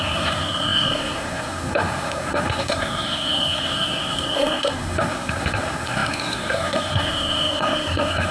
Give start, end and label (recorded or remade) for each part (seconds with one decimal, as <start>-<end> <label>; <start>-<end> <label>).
0.0-8.3 remade